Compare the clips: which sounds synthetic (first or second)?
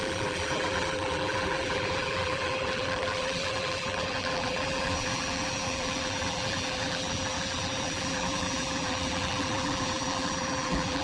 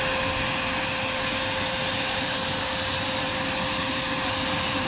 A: first